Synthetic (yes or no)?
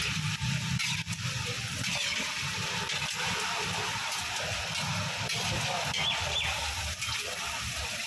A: yes